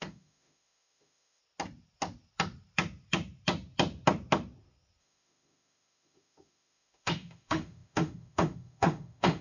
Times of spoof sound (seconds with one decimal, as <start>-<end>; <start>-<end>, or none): 0.0-1.4; 5.0-9.4